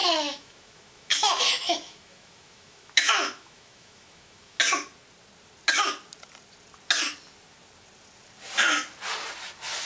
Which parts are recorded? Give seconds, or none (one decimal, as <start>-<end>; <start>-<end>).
4.6-9.9